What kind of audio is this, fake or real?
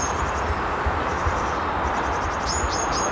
real